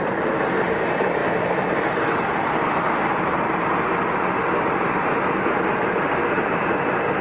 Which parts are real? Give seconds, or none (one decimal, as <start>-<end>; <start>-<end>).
0.0-7.2